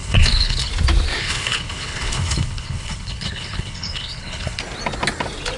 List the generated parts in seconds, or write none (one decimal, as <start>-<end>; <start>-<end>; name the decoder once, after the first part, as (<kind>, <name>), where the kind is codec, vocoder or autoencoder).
0.0-0.7 (codec, HILCodec); 1.2-4.6

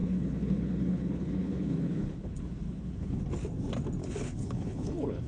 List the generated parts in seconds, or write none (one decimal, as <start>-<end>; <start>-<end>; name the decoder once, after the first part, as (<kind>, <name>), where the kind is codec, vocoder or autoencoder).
0.0-3.2 (codec, HILCodec); 4.0-5.3

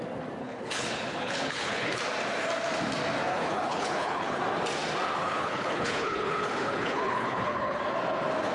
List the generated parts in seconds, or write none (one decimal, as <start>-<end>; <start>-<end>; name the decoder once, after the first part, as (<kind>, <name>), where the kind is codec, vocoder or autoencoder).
0.4-2.0 (codec, HILCodec); 3.3-4.4; 5.2-7.8